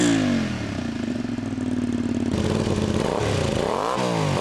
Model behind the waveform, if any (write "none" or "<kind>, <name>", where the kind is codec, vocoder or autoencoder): none